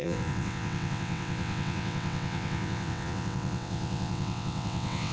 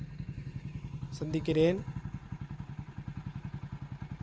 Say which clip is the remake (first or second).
first